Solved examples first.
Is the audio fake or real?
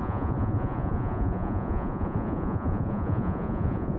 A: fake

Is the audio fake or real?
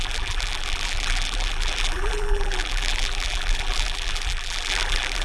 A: fake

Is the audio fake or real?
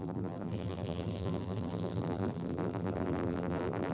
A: fake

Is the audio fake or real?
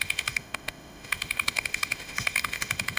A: fake